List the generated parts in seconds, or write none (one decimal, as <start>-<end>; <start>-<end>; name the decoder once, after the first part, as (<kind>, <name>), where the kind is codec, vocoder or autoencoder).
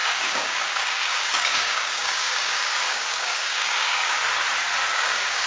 0.0-4.2 (codec, DAC); 4.9-5.5